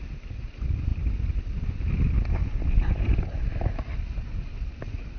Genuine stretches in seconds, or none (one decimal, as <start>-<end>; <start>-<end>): 0.0-5.2